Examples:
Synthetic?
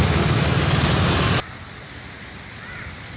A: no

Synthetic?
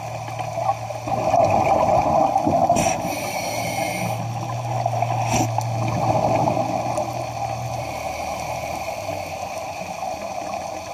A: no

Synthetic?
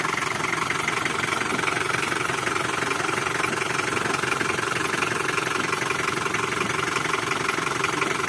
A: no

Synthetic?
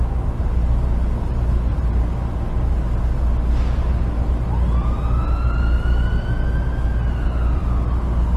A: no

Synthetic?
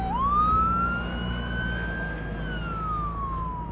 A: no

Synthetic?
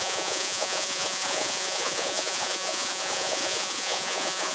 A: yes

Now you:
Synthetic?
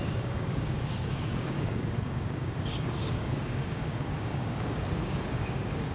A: yes